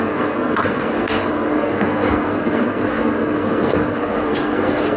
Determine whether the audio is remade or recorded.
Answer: remade